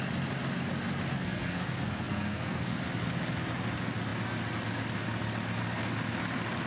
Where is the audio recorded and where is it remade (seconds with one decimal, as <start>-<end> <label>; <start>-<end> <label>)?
0.0-1.1 recorded; 1.1-2.8 remade; 2.8-6.7 recorded